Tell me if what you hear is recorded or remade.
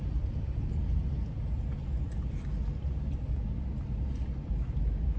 recorded